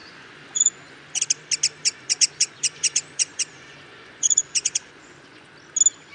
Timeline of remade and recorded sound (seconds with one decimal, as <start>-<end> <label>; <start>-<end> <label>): 0.0-1.2 remade; 1.2-1.8 recorded; 1.8-5.5 remade; 5.5-6.1 recorded